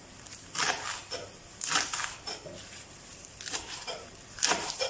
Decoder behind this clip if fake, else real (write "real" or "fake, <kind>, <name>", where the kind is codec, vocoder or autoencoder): fake, vocoder, BigVGAN v2